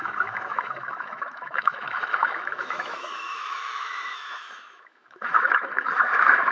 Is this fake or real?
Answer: fake